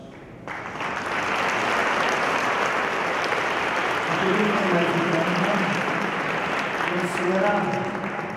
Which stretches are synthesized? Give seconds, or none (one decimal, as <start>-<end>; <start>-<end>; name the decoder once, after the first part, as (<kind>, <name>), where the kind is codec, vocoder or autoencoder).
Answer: 1.8-6.6 (vocoder, BigVGAN v2)

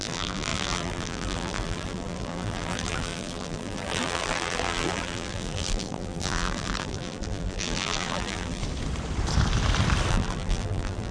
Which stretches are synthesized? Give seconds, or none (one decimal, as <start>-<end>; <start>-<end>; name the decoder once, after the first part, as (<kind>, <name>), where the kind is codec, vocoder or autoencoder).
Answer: 0.0-8.6 (vocoder, BigVGAN v2); 10.1-11.1

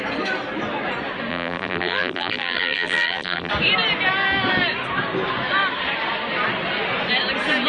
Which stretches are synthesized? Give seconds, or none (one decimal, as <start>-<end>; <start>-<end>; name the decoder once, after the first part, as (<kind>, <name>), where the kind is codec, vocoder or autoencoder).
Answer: 1.3-3.5 (vocoder, BigVGAN v2)

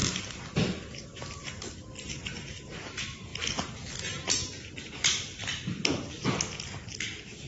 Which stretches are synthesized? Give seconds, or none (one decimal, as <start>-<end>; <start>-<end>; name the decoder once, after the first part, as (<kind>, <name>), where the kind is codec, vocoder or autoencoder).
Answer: 5.5-6.4 (vocoder, BigVGAN v2)

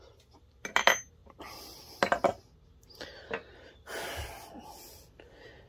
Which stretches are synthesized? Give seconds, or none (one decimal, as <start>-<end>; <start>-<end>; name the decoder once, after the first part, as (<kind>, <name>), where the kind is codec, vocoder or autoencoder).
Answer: none